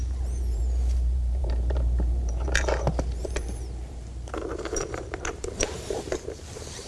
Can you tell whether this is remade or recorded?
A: remade